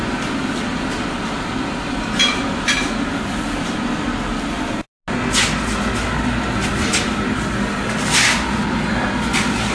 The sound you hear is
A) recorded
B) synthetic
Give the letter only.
A